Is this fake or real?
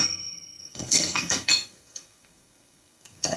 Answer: fake